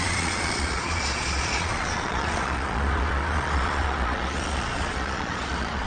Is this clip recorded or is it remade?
remade